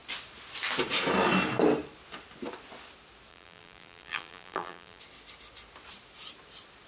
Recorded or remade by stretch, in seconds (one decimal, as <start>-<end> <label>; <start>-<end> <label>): 0.0-3.3 recorded; 3.3-5.0 remade; 5.0-6.9 recorded